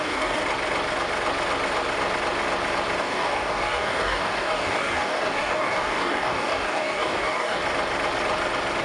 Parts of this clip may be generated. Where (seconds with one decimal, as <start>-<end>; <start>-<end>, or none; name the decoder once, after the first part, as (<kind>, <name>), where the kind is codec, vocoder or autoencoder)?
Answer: 0.0-0.4 (codec, DAC); 3.0-7.6